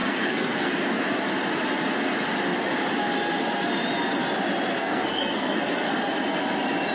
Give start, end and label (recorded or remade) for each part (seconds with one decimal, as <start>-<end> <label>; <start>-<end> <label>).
0.0-0.7 remade; 0.7-4.8 recorded; 4.8-5.9 remade; 5.9-6.9 recorded